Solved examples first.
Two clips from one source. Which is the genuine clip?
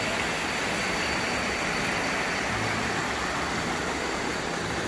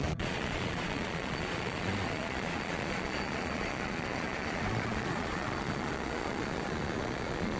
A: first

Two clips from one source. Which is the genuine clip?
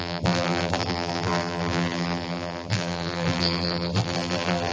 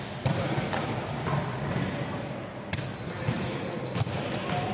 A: second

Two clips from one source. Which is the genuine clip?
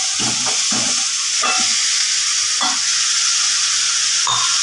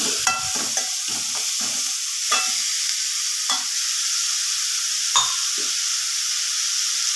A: second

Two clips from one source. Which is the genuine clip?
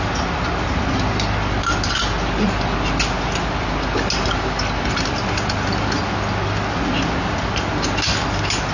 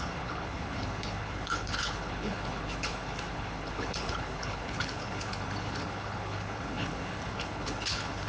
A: first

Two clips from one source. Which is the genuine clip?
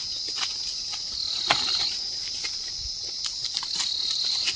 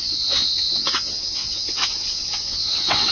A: first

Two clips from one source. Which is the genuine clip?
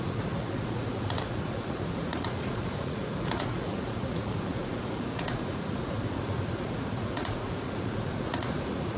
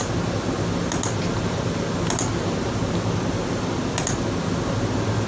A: second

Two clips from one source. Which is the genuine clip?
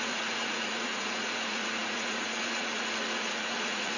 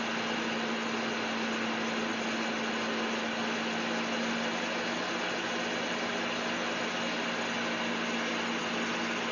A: second